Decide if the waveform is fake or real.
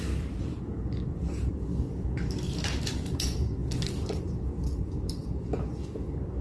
fake